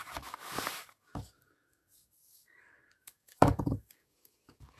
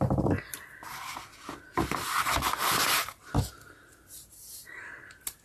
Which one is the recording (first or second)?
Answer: second